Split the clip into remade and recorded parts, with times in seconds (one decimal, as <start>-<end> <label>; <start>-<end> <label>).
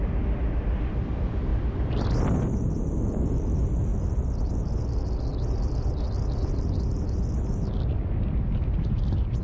0.0-9.4 recorded